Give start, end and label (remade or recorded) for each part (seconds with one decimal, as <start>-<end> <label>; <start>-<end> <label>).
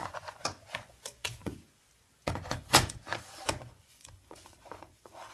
0.0-5.3 remade